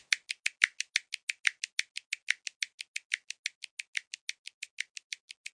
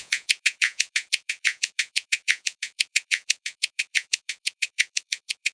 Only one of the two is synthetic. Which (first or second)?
second